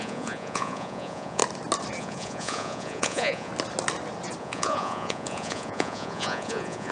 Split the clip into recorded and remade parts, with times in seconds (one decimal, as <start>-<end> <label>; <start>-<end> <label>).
0.0-1.4 remade; 1.4-2.0 recorded; 2.0-3.5 remade; 3.5-4.4 recorded; 4.4-6.9 remade